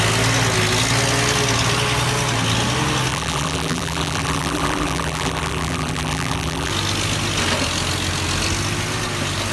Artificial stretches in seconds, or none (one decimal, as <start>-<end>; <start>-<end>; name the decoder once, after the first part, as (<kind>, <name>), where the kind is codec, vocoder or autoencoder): 3.1-6.7 (vocoder, BigVGAN v2)